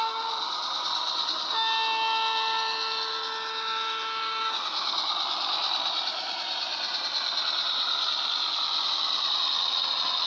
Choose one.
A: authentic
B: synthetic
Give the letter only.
A